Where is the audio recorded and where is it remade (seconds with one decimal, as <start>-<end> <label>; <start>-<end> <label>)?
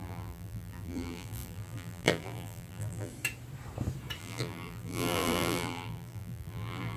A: 0.0-3.1 remade; 3.1-4.2 recorded; 4.2-7.0 remade